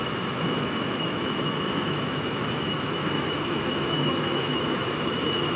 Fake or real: fake